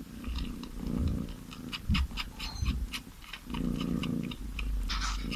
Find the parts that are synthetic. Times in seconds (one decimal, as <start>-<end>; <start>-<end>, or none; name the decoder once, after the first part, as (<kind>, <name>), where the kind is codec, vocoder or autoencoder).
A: 4.0-4.9 (vocoder, BigVGAN v2)